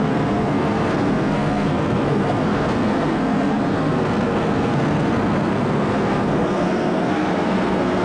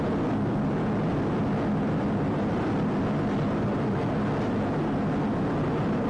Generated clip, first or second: first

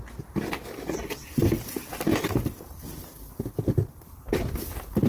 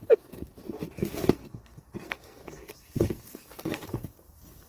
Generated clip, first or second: second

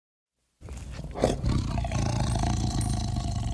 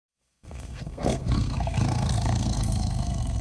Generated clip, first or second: second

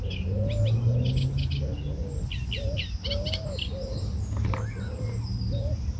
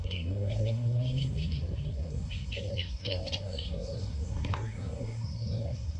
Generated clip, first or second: second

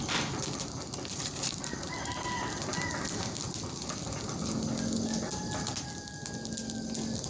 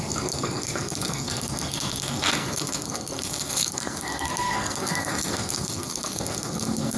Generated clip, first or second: second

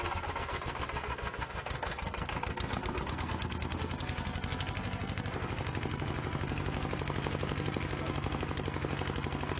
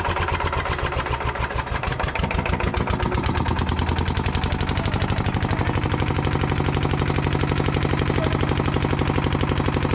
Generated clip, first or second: first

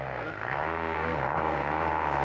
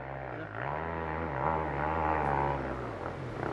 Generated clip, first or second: first